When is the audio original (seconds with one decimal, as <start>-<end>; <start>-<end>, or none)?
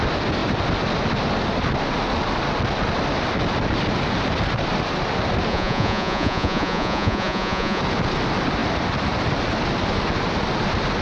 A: 0.0-5.5; 7.8-11.0